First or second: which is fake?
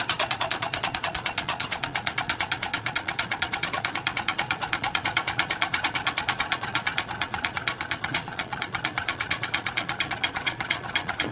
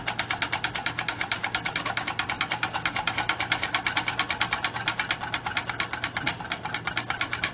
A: first